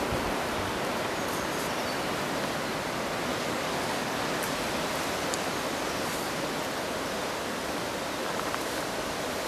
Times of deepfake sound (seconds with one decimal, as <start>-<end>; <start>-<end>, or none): 3.3-4.2